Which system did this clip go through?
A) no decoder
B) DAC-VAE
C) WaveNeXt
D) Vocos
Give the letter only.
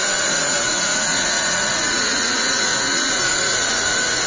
D